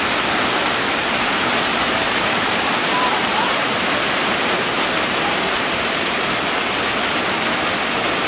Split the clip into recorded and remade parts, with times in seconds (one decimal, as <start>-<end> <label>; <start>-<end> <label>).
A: 0.0-2.1 recorded; 2.1-2.7 remade; 2.7-3.3 recorded; 3.3-6.1 remade; 6.1-6.9 recorded; 6.9-7.4 remade; 7.4-8.3 recorded